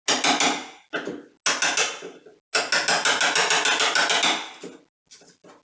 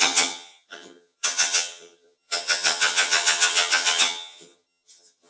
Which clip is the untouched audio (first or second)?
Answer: first